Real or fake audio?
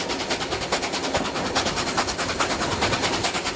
real